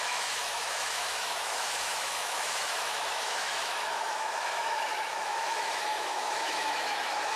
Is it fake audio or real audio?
fake